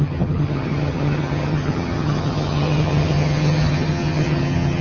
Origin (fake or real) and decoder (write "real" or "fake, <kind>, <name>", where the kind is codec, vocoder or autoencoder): fake, vocoder, HiFi-GAN